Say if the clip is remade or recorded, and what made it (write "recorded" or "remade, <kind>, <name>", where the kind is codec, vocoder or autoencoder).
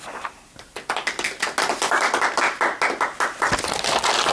recorded